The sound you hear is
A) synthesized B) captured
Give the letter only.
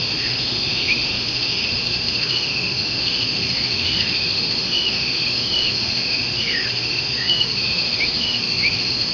A